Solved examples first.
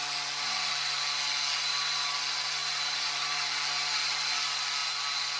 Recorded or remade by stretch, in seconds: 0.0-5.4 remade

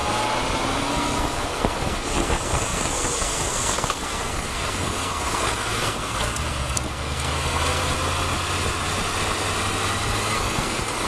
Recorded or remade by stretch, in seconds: 0.0-0.8 recorded; 0.8-7.8 remade; 7.8-10.3 recorded; 10.3-11.1 remade

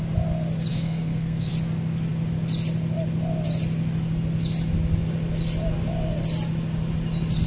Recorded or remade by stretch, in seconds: 0.0-0.7 recorded; 0.7-1.5 remade; 1.5-7.5 recorded

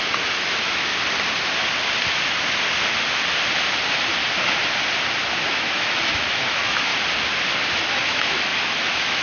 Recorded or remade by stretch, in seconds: 0.0-0.9 remade; 0.9-5.5 recorded; 5.5-6.9 remade; 6.9-7.7 recorded; 7.7-9.2 remade

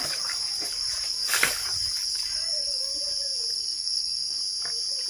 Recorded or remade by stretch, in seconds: 0.0-2.9 remade; 2.9-3.5 recorded; 3.5-4.4 remade; 4.4-5.1 recorded

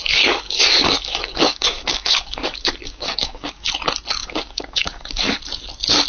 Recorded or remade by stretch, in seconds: 0.0-3.7 remade; 3.7-4.2 recorded; 4.2-5.4 remade; 5.4-6.1 recorded

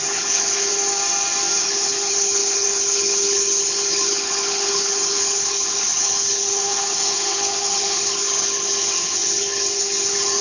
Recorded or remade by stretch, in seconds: 0.0-0.7 remade; 0.7-1.6 recorded; 1.6-10.4 remade